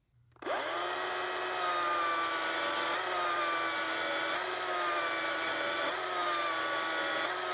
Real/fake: real